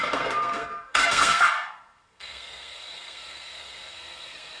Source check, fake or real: fake